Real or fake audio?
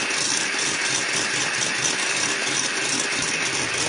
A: real